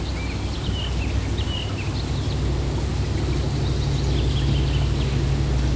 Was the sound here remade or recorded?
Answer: recorded